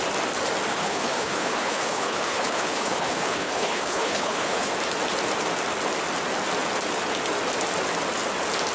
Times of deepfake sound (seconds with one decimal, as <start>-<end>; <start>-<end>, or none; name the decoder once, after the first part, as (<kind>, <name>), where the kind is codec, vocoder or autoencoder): 0.7-4.7 (codec, HILCodec)